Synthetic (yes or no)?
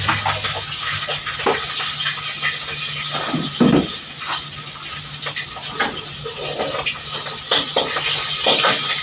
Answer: no